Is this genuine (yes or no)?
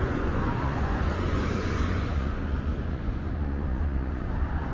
no